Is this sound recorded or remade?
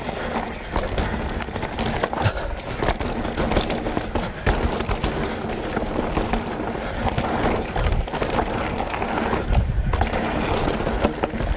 recorded